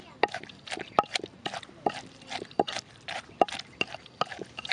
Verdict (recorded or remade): recorded